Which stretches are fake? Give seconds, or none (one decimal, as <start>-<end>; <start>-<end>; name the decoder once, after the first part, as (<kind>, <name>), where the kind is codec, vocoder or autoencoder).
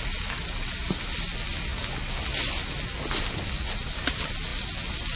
none